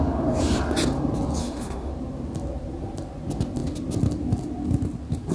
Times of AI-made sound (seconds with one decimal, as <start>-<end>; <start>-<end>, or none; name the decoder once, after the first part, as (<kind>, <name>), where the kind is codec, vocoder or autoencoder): 1.4-1.9 (autoencoder, DAC-VAE)